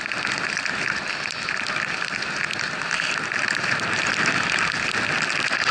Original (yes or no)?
yes